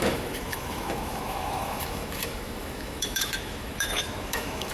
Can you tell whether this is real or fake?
fake